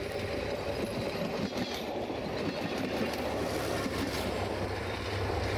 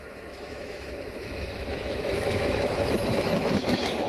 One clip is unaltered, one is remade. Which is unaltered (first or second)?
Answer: first